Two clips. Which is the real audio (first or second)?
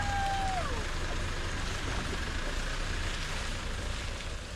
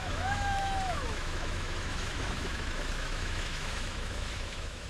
first